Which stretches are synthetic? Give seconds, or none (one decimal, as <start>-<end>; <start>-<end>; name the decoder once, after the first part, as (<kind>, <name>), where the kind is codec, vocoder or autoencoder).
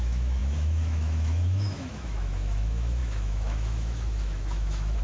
0.0-5.0 (autoencoder, DAC-VAE)